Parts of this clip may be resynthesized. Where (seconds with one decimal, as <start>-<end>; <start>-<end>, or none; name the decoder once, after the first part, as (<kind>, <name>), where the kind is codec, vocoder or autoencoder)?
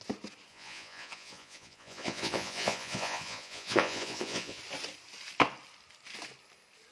0.5-4.6 (vocoder, Vocos)